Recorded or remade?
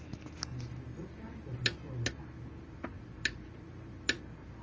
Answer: recorded